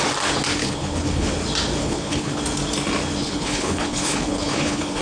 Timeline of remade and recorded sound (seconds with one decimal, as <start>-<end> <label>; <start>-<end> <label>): 0.0-0.6 recorded; 0.6-1.3 remade; 1.3-1.8 recorded; 1.8-2.4 remade; 2.4-3.2 recorded; 3.2-5.0 remade

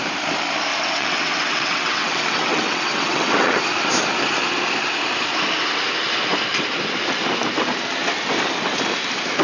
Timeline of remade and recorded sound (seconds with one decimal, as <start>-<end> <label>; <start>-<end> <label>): 0.0-0.7 recorded; 0.7-3.6 remade; 3.6-9.4 recorded

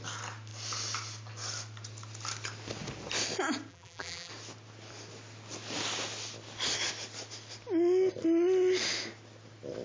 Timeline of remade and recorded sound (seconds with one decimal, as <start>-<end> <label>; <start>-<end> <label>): 0.0-3.7 recorded; 3.7-4.3 remade; 4.3-9.8 recorded

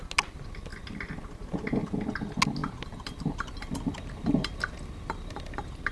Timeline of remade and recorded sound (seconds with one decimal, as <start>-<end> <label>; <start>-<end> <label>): 0.0-0.7 recorded; 0.7-1.2 remade; 1.2-2.6 recorded; 2.6-5.4 remade; 5.4-5.9 recorded

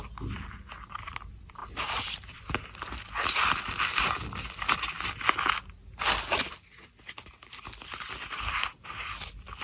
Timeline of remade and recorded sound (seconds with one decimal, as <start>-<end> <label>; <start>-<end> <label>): 0.0-9.6 recorded

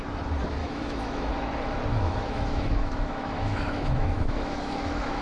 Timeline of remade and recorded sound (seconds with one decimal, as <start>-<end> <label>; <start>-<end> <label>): 0.0-0.6 recorded; 0.6-1.3 remade; 1.3-1.9 recorded; 1.9-5.2 remade

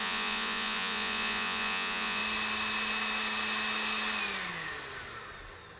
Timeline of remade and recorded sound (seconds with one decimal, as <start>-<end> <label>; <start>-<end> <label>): 0.0-2.2 remade; 2.2-5.8 recorded

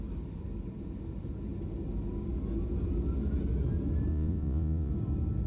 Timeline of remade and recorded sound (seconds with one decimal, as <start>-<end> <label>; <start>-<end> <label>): 0.0-4.1 recorded; 4.1-4.9 remade; 4.9-5.5 recorded